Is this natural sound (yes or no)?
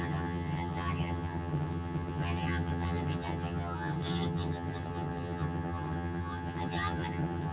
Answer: no